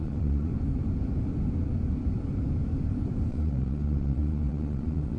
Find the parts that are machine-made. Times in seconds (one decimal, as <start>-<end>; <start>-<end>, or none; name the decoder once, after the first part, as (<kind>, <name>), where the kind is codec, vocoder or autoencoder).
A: 0.0-0.5 (vocoder, Vocos); 3.3-5.2